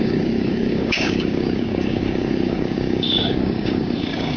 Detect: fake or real fake